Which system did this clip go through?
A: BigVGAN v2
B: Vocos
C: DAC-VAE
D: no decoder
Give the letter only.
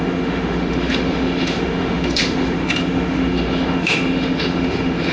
C